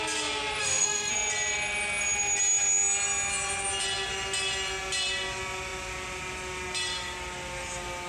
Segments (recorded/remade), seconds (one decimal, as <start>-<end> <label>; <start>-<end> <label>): 0.0-0.6 recorded; 0.6-1.1 remade; 1.1-8.1 recorded